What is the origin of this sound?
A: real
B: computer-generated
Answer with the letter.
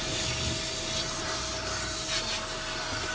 A